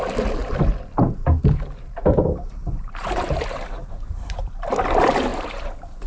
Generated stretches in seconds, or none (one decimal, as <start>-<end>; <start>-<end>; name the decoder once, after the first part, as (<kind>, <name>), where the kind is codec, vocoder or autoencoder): 2.6-4.5 (vocoder, BigVGAN v2); 5.3-6.1